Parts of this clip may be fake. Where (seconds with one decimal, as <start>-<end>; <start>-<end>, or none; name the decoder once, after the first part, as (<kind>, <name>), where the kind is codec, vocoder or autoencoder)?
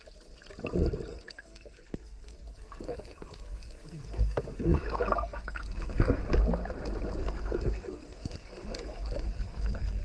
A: 1.1-6.2 (codec, SNAC); 7.2-10.0